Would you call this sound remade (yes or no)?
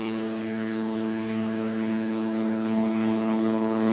yes